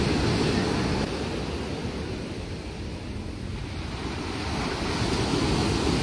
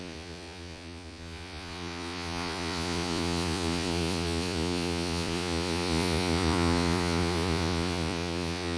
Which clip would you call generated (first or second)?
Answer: second